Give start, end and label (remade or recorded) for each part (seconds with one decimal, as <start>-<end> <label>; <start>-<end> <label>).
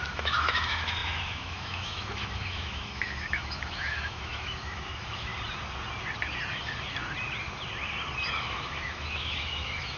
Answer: 0.0-5.3 remade; 5.3-8.4 recorded; 8.4-10.0 remade